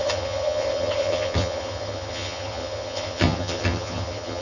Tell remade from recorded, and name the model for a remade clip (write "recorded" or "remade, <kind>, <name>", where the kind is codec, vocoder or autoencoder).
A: remade, vocoder, HiFi-GAN